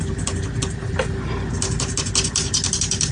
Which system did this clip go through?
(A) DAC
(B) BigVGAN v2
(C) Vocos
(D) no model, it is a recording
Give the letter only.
D